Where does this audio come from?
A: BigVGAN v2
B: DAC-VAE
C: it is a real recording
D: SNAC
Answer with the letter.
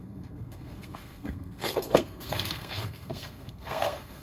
D